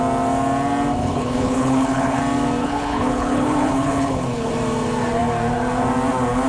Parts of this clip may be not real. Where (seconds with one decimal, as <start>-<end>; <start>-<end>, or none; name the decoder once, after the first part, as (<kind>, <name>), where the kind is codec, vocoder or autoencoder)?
1.0-2.2 (codec, HILCodec); 2.6-4.5